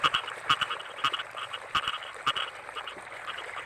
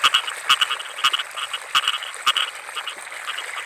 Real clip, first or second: second